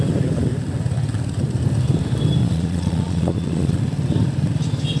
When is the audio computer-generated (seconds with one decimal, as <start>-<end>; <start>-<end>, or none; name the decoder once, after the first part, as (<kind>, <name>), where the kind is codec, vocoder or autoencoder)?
2.4-3.8 (vocoder, Vocos)